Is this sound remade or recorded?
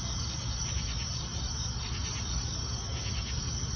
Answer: recorded